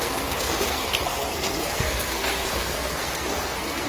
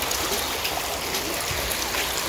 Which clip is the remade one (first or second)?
first